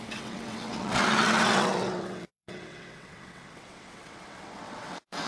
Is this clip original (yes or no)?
no